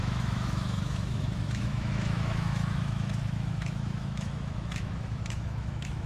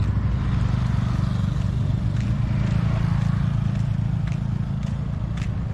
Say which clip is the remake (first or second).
first